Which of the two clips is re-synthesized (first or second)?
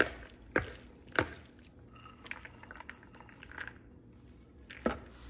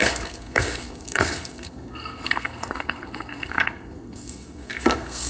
second